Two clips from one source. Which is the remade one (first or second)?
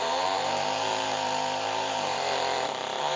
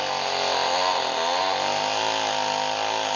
first